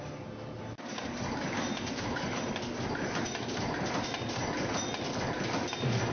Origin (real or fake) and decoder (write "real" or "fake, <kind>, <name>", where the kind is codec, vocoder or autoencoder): real